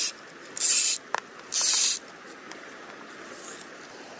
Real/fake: real